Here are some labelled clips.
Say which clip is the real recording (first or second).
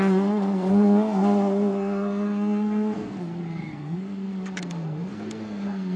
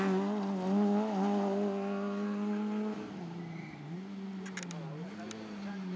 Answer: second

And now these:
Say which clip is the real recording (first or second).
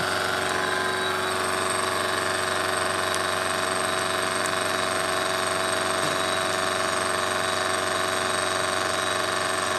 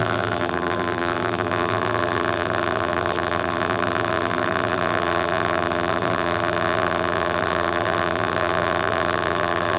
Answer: first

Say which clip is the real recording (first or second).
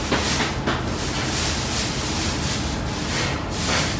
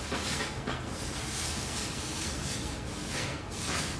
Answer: first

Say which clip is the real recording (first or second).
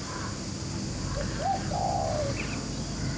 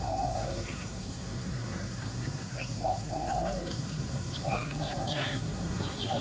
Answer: first